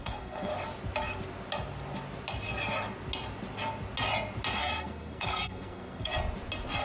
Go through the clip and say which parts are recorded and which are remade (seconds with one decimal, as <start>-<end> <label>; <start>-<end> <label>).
0.0-0.5 remade; 0.5-4.6 recorded; 4.6-6.1 remade; 6.1-6.8 recorded